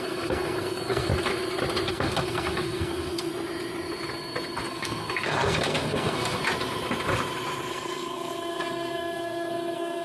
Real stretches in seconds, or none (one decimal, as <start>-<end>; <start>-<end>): 1.1-1.9; 3.3-4.7; 6.4-7.7